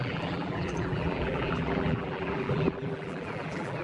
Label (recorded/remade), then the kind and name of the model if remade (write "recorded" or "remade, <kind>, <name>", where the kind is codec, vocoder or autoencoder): remade, vocoder, BigVGAN v2